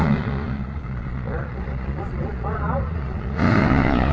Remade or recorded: remade